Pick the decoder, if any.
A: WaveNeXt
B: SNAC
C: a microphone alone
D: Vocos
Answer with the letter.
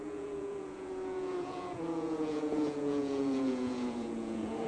D